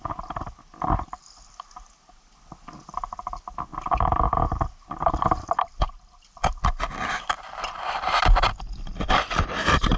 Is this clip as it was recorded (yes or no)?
yes